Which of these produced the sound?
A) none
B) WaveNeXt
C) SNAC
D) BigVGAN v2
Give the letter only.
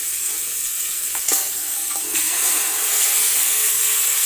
C